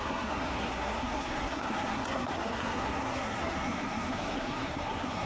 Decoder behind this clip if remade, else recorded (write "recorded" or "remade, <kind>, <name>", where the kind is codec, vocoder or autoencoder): remade, codec, SNAC